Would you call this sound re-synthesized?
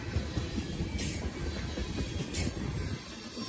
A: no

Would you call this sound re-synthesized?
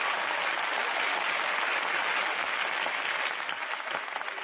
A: no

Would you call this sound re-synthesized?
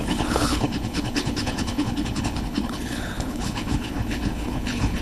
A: yes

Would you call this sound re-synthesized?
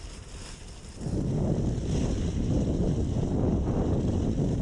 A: no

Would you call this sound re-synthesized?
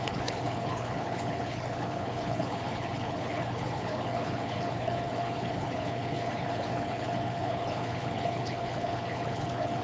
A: yes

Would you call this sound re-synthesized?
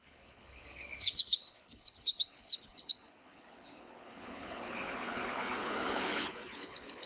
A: yes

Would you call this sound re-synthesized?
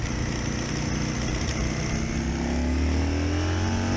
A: no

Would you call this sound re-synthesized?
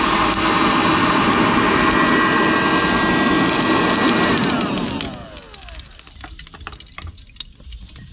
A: no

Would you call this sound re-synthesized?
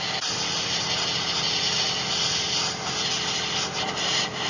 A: no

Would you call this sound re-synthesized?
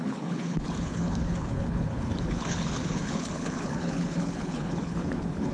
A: yes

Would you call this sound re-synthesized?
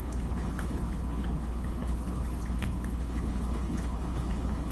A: yes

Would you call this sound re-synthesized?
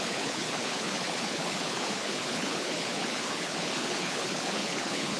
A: yes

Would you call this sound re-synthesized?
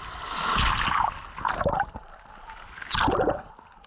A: no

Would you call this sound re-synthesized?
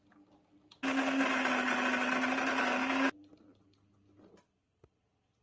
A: no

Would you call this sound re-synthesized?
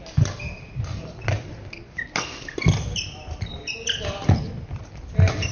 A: no